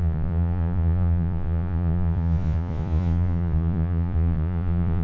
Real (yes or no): no